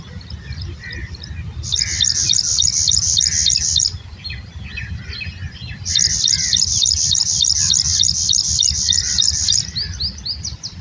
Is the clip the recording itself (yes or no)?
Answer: yes